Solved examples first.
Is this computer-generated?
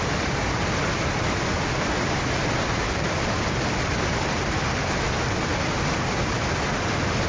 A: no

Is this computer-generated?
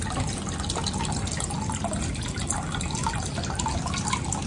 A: no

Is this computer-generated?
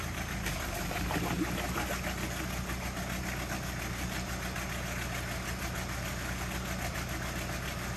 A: no